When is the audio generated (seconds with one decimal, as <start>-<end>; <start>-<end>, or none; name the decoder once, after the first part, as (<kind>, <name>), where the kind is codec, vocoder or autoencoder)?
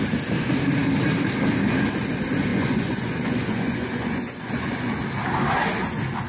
2.5-4.9 (vocoder, Vocos)